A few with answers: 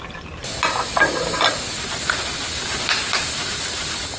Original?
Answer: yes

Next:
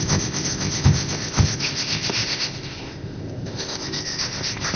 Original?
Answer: no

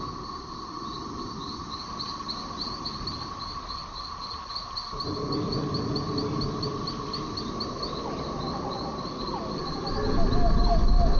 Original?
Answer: yes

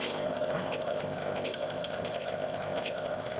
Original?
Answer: no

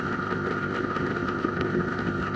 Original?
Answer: no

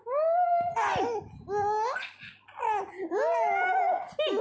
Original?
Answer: yes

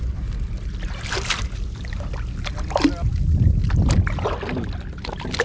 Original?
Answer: yes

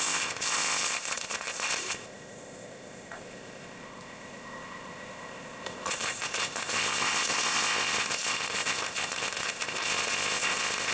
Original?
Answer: no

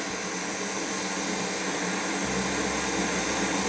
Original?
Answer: yes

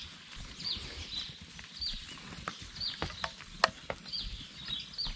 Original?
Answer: yes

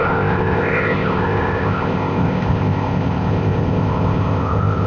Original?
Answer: no